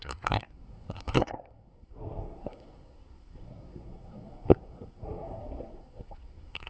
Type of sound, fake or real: fake